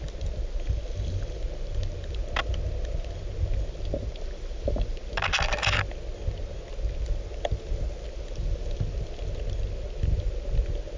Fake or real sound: real